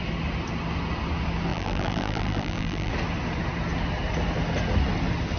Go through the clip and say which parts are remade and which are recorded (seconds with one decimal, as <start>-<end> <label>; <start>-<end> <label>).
0.0-1.5 recorded; 1.5-2.9 remade; 2.9-5.4 recorded